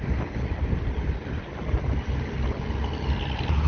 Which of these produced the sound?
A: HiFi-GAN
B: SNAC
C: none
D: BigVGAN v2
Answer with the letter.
C